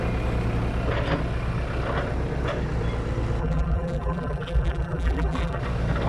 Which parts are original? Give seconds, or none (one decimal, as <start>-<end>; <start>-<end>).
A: 0.0-3.4; 5.6-6.1